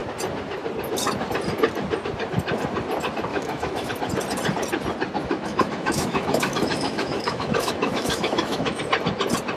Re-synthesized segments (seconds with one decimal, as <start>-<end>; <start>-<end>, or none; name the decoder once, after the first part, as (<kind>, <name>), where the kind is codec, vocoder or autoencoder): 3.3-3.9 (autoencoder, DAC-VAE); 5.2-8.8